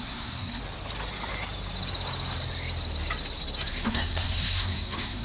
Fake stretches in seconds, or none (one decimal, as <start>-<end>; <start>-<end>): 0.0-0.6; 3.7-5.2